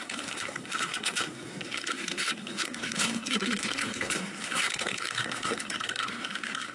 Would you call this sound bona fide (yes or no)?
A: no